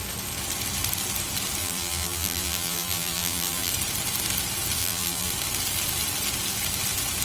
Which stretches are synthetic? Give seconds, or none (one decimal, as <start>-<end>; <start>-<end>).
1.6-3.7; 4.8-5.3